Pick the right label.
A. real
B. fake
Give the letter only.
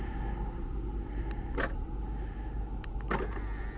A